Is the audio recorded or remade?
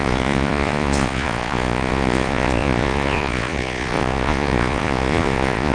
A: remade